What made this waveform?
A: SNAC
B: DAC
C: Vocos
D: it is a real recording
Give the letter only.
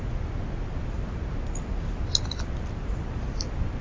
D